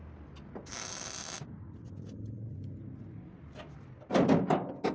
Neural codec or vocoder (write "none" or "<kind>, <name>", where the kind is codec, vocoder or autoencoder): none